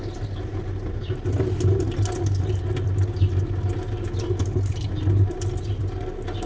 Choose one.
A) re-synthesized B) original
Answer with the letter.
B